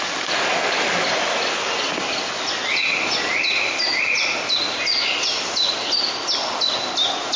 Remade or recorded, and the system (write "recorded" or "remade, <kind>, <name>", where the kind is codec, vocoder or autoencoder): recorded